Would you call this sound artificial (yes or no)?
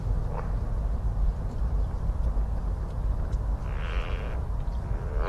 no